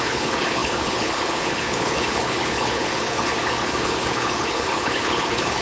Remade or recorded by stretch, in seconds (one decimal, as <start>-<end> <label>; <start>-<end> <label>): 0.0-5.6 remade